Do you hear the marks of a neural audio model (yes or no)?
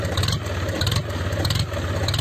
no